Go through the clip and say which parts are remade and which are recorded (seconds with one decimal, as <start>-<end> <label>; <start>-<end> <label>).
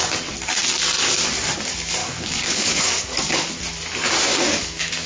0.0-2.0 recorded; 2.0-3.5 remade; 3.5-4.3 recorded; 4.3-5.1 remade